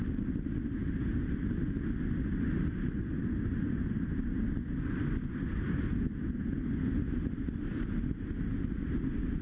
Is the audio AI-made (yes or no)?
no